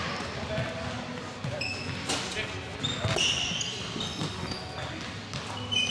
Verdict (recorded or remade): recorded